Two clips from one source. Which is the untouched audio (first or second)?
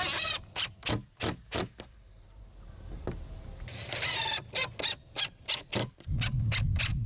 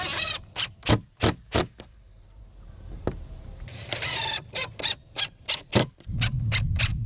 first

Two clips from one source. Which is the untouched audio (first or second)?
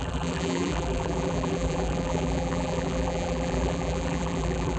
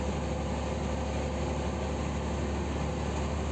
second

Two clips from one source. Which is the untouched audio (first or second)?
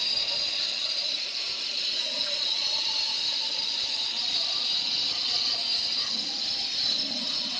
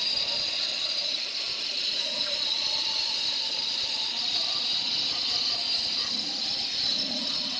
first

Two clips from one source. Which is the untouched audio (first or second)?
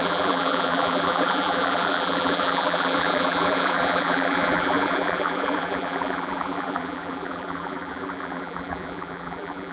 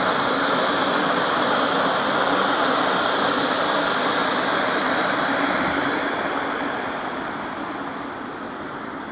second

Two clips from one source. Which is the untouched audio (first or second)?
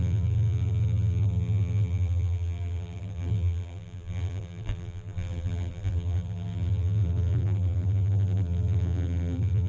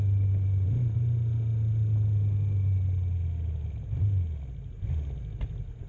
second